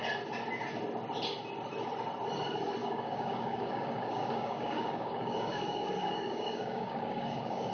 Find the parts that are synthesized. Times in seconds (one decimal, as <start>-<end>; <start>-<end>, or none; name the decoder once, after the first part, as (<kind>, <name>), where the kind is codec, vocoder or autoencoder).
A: 2.8-7.7 (codec, DAC)